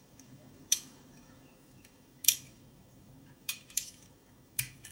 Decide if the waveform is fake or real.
fake